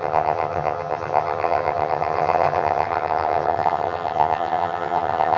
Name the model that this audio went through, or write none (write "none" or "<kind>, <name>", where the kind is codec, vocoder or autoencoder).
vocoder, HiFi-GAN